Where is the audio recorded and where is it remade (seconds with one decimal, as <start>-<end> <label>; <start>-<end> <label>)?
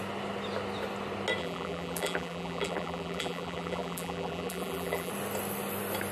0.0-1.4 recorded; 1.4-5.1 remade; 5.1-6.1 recorded